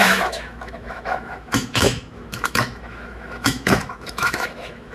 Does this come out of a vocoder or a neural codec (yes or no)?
yes